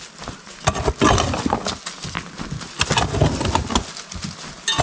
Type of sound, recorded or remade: recorded